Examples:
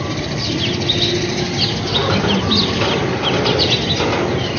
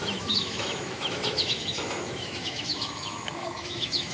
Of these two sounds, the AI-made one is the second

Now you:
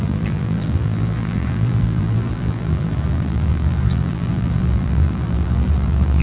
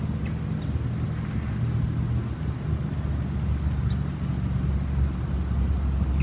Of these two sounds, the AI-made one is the first